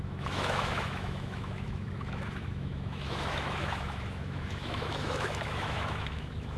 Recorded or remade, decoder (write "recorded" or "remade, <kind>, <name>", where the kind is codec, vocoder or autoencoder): remade, autoencoder, DAC-VAE